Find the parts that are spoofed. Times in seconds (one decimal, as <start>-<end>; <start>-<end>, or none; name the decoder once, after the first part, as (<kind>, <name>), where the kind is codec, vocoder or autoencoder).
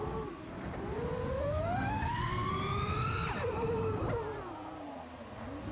1.4-2.5 (codec, SNAC)